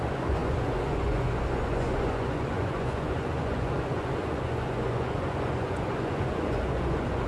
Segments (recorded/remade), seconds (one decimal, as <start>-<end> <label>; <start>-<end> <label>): 0.0-7.3 remade